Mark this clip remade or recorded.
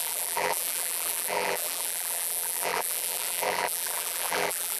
remade